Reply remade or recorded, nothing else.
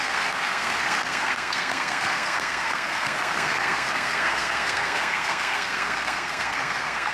remade